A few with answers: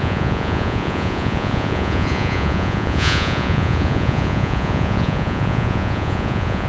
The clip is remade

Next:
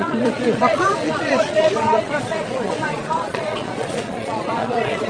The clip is remade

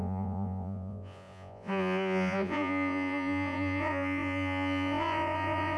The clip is remade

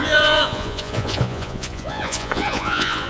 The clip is remade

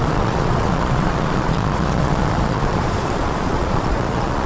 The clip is remade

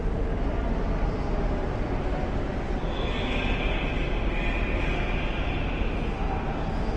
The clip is recorded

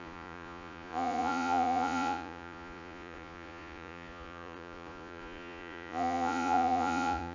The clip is remade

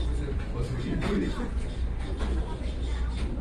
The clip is remade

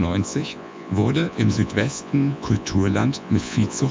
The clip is remade